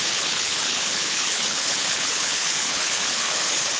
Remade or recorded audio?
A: remade